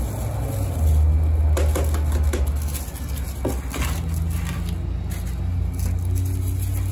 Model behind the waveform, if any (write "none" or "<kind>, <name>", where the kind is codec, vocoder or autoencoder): none